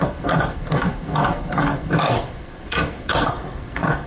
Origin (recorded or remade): remade